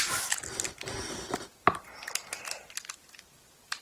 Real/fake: real